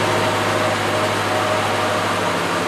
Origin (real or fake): real